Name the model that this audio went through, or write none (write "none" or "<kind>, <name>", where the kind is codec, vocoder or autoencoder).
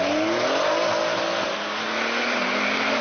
none